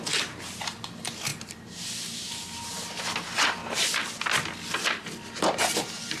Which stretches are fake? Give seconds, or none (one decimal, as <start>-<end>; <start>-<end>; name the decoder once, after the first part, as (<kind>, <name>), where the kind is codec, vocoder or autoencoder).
3.6-4.1 (vocoder, BigVGAN v2)